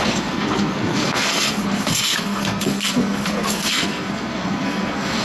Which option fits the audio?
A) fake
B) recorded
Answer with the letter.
A